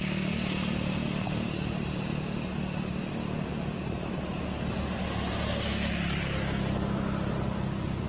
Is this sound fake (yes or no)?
no